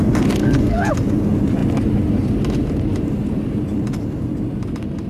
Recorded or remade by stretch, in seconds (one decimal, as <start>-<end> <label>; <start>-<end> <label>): 0.0-0.4 recorded; 0.4-0.9 remade; 0.9-5.1 recorded